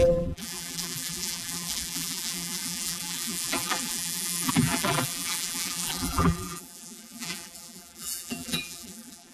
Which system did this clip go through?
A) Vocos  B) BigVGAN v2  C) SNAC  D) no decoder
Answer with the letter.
B